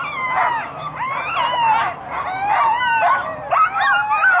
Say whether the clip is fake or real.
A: real